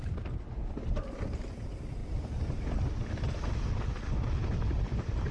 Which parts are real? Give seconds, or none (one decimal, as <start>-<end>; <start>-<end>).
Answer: 0.0-5.3